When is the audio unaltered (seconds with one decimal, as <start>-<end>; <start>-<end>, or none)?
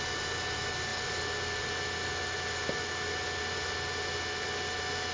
0.0-5.1